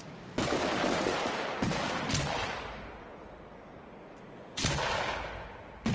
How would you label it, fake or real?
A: real